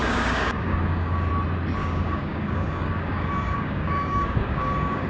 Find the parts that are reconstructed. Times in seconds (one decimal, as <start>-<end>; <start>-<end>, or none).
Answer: 0.0-1.3; 1.8-5.1